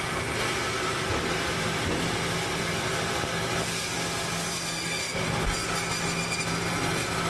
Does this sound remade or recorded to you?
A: recorded